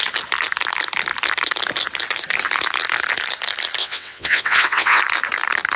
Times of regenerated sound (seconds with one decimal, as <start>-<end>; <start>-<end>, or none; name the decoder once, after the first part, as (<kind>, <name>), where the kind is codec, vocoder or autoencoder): 3.8-5.0 (vocoder, WaveNeXt)